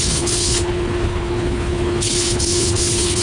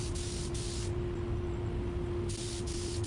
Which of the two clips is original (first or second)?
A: second